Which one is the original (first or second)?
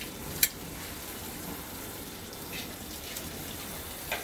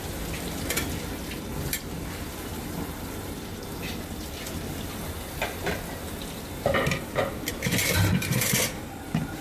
second